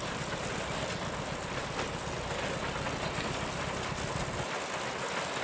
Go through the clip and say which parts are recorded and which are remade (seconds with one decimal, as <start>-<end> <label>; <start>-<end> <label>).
0.0-5.4 recorded